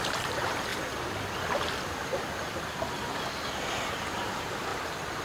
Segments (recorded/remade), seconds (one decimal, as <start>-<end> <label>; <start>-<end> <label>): 0.0-0.7 remade; 0.7-3.8 recorded; 3.8-4.7 remade; 4.7-5.2 recorded